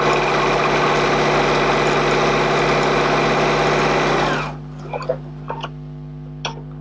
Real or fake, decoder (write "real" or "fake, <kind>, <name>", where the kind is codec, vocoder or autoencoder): real